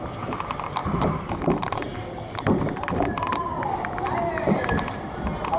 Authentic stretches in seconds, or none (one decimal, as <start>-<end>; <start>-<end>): 0.8-1.3